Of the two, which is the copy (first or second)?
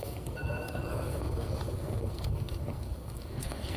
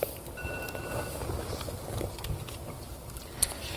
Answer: first